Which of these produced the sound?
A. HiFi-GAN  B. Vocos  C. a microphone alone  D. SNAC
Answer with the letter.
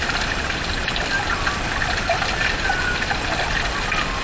C